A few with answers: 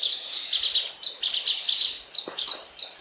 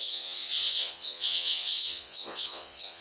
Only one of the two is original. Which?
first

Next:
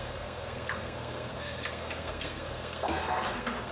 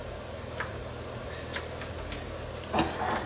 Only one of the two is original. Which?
second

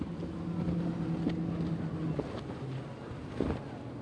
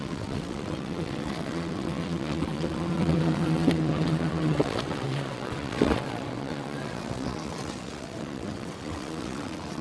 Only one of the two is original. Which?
first